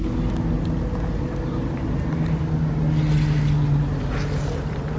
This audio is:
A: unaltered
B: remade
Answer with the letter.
A